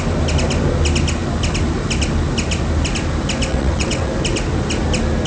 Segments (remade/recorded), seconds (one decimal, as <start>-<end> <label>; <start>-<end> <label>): 0.0-3.5 recorded; 3.5-4.1 remade; 4.1-5.3 recorded